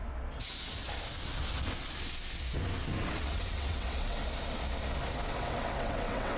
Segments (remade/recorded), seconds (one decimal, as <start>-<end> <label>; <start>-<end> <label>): 0.0-3.1 recorded; 3.1-4.2 remade; 4.2-5.3 recorded; 5.3-6.4 remade